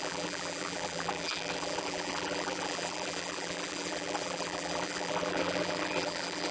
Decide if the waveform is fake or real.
fake